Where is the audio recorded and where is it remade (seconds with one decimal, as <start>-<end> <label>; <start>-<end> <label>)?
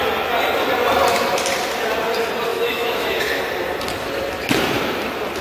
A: 0.0-2.5 recorded; 2.5-3.4 remade; 3.4-5.4 recorded